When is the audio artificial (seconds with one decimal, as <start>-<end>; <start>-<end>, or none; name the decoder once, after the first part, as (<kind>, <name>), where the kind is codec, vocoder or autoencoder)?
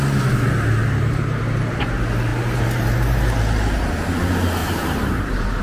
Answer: 0.8-1.4 (vocoder, BigVGAN v2); 2.3-3.2; 4.6-5.6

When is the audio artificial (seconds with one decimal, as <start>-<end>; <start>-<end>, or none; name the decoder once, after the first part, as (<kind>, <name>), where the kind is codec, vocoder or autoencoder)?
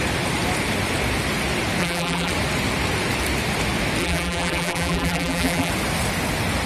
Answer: 1.8-2.3 (vocoder, BigVGAN v2); 4.0-5.7